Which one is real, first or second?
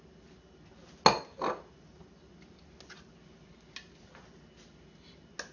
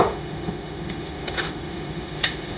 first